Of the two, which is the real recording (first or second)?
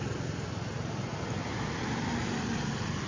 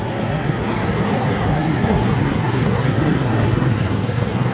first